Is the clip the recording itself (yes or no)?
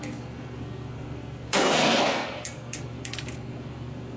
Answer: no